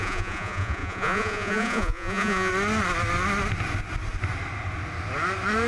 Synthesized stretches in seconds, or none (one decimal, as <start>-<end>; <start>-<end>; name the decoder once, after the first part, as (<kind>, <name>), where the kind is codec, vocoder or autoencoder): 0.0-2.5 (vocoder, Vocos)